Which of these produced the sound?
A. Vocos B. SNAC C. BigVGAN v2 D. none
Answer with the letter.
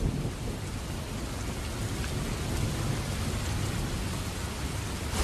D